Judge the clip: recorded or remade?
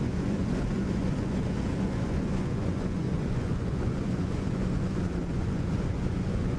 remade